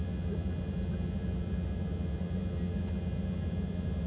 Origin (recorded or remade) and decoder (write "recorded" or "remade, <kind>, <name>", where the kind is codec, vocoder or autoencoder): recorded